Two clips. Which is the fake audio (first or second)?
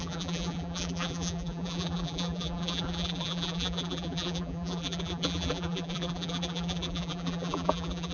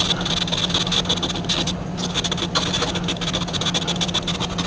first